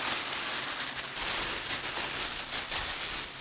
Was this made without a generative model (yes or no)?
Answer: yes